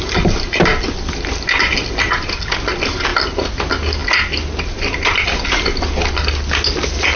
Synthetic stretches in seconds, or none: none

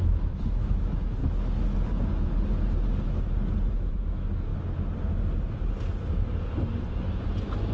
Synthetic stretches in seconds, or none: 0.0-1.2 (autoencoder, DAC-VAE); 3.7-4.5

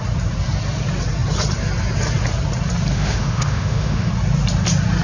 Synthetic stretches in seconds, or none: 2.9-4.1 (autoencoder, DAC-VAE)

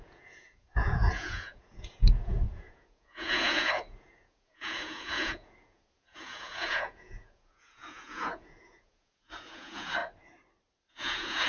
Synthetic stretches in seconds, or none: 0.0-10.0 (vocoder, Vocos); 10.9-11.5

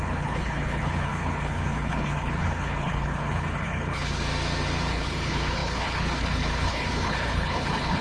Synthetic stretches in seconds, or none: 0.0-4.2 (codec, HILCodec); 4.9-8.0

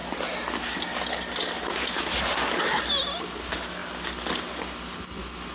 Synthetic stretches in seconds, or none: none

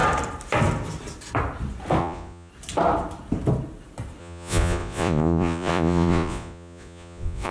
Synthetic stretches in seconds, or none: 2.0-2.5 (vocoder, Vocos); 4.2-7.5

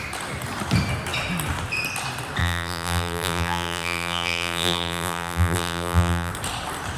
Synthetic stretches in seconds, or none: 2.4-6.3 (vocoder, BigVGAN v2)